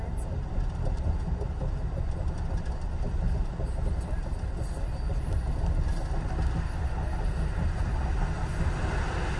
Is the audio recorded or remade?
recorded